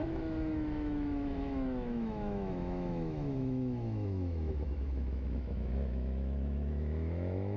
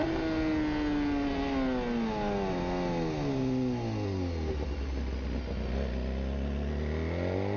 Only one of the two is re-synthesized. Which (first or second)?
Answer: first